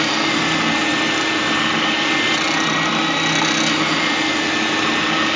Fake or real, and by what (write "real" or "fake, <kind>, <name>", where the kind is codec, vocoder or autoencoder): real